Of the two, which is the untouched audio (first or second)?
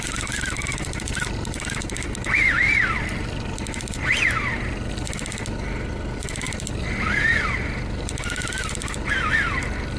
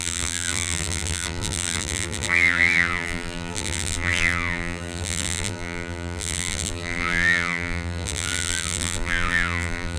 first